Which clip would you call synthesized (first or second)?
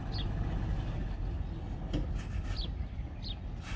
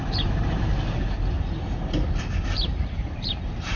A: second